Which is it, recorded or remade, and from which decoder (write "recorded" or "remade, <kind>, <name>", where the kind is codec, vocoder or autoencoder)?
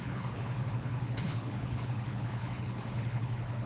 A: remade, codec, HILCodec